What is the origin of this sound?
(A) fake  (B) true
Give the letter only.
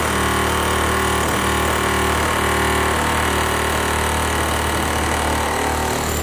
B